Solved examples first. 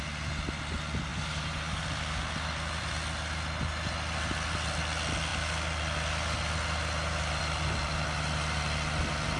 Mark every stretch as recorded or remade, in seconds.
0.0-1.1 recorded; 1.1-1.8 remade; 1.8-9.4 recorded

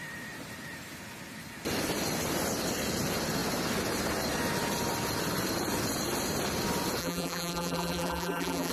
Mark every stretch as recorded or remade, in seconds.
0.0-7.0 recorded; 7.0-8.7 remade

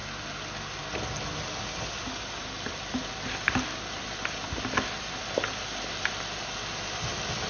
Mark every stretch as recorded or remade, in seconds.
0.0-7.5 recorded

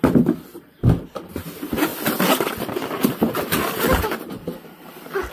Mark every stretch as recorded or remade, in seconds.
0.0-5.3 remade

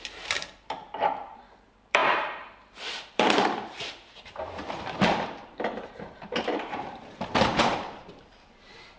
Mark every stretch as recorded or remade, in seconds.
0.0-9.0 remade